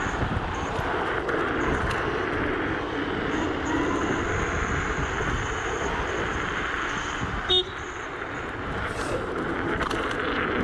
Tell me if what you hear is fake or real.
real